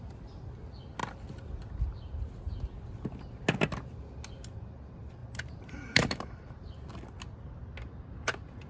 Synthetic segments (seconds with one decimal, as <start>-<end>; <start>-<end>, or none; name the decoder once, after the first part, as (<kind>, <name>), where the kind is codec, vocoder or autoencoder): 5.2-6.5 (vocoder, BigVGAN v2)